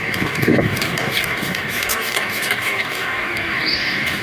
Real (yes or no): no